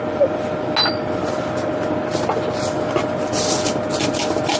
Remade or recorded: recorded